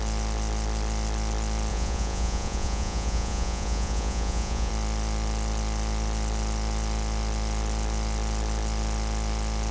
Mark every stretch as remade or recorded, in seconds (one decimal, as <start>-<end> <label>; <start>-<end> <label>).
0.0-1.7 recorded; 1.7-4.7 remade; 4.7-9.7 recorded